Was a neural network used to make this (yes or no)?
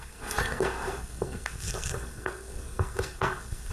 yes